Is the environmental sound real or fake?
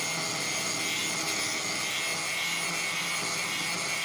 real